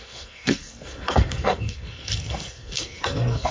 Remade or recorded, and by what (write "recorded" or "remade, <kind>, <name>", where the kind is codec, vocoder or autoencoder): remade, codec, SNAC